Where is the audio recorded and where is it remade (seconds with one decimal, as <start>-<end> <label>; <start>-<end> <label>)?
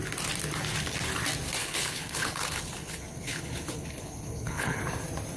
0.0-1.6 recorded; 1.6-4.8 remade; 4.8-5.4 recorded